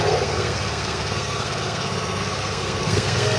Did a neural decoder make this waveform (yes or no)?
yes